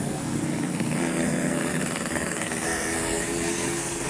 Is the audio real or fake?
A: fake